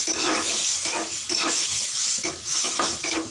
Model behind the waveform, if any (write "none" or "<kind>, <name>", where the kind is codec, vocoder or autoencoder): autoencoder, DAC-VAE